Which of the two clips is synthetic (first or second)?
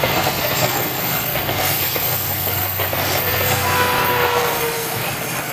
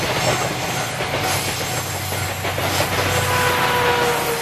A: first